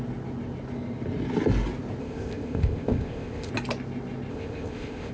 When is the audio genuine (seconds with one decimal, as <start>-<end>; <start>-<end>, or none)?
0.0-2.0; 3.5-4.3